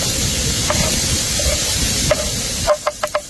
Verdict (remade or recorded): recorded